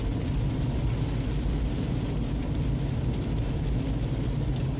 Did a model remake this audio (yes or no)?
no